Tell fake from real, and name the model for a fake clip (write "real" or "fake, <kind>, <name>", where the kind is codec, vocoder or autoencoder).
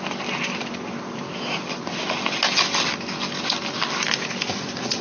real